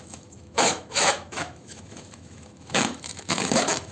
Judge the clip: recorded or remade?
remade